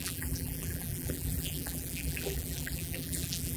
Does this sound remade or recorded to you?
remade